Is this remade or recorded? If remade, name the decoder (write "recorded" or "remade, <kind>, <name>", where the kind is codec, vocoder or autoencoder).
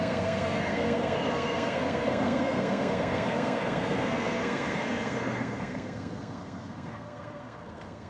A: remade, codec, SNAC